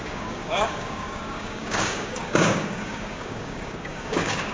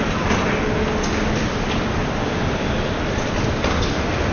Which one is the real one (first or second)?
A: second